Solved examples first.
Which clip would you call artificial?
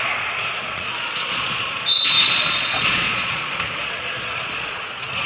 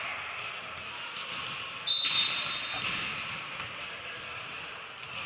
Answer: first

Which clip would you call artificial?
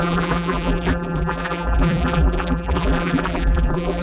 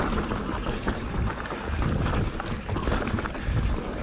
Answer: first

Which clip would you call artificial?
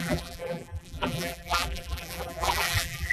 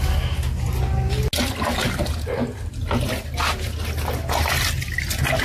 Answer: first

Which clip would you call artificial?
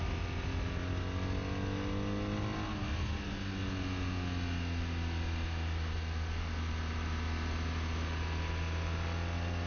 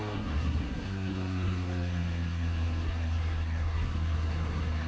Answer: second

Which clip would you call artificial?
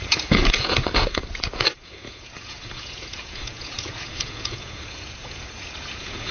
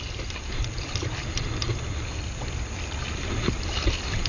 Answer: first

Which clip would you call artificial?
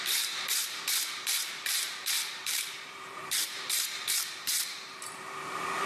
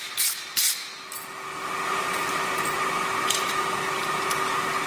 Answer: first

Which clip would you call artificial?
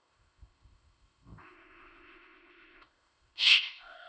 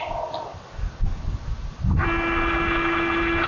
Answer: first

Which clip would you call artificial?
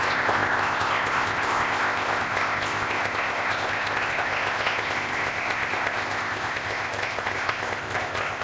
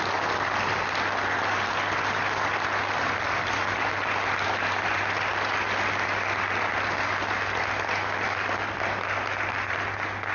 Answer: first